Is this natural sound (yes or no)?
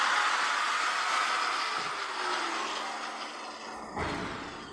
yes